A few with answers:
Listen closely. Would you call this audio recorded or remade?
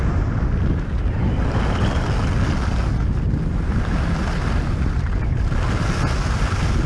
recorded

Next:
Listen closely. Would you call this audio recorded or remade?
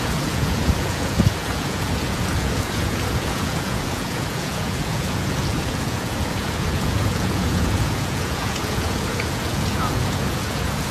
remade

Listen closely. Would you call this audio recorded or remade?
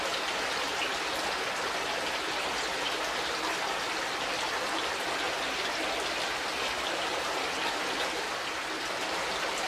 recorded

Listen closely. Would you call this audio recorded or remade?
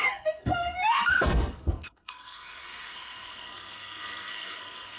remade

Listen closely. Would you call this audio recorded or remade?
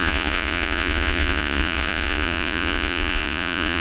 remade